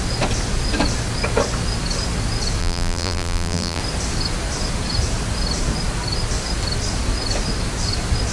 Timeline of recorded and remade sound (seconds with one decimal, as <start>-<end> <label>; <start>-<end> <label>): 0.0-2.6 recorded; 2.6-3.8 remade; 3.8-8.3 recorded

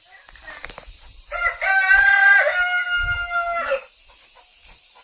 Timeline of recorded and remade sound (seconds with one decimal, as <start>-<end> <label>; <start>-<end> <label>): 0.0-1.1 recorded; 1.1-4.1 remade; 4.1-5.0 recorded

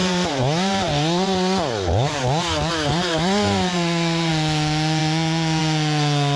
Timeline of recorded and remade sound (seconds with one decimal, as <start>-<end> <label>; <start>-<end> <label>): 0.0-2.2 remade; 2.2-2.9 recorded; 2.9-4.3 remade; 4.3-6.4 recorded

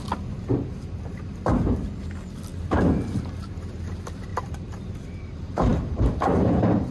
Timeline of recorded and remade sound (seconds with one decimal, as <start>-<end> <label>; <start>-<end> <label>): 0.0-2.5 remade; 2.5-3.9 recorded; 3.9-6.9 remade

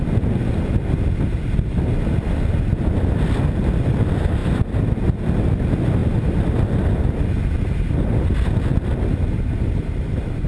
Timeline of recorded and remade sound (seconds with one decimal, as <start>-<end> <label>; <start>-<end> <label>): 0.0-10.5 recorded